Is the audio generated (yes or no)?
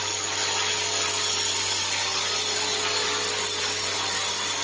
no